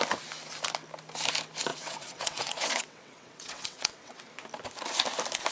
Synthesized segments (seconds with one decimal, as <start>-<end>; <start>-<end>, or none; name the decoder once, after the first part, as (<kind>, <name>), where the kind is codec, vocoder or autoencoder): 1.7-4.3 (vocoder, WaveNeXt)